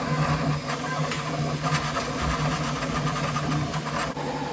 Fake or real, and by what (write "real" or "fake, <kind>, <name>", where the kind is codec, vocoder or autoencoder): real